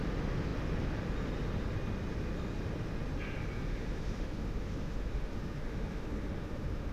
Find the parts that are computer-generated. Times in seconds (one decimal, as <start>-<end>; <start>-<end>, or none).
3.7-6.9